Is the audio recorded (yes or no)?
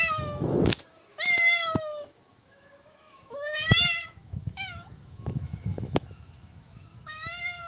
no